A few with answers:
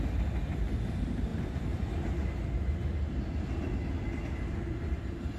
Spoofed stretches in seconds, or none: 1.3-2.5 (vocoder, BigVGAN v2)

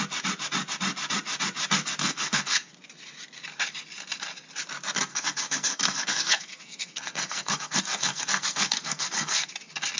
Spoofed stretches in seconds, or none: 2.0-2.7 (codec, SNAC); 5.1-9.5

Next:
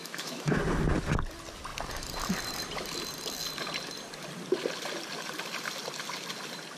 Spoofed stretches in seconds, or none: 0.0-0.6 (autoencoder, DAC-VAE)

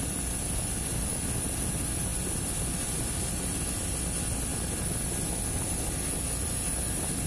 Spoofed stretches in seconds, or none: none

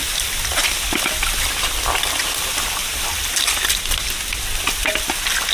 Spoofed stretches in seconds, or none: none

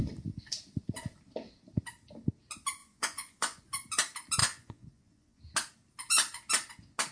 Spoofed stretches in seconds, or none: 2.8-3.6 (vocoder, Vocos); 4.4-5.4